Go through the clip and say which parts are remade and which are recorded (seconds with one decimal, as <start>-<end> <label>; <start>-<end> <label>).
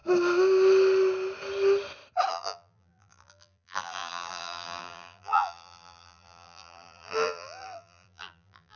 0.0-2.3 recorded; 2.3-8.8 remade